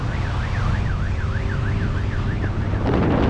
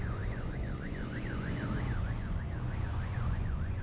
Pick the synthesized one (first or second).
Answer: second